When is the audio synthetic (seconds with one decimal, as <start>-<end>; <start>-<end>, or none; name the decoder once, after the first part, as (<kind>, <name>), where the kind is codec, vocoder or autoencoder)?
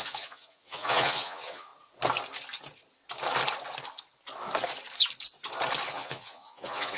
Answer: 0.0-1.7 (vocoder, Vocos); 5.9-7.0